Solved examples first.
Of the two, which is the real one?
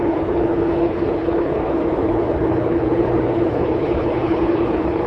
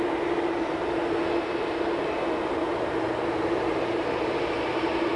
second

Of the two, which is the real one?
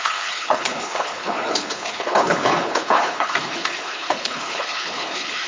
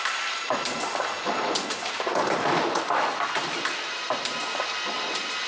second